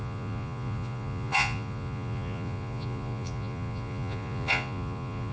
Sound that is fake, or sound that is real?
fake